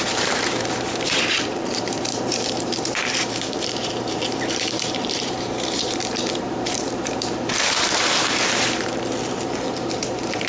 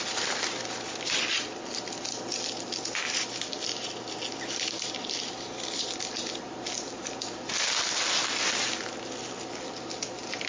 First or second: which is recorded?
second